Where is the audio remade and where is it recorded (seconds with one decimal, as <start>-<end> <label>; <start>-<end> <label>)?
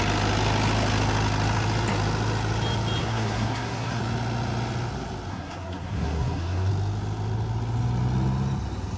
0.0-3.0 recorded; 3.0-4.0 remade; 4.0-5.3 recorded; 5.3-6.7 remade; 6.7-9.0 recorded